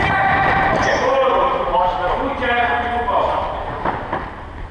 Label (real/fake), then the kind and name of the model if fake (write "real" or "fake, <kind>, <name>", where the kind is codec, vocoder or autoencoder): real